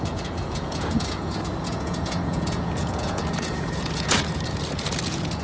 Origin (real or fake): fake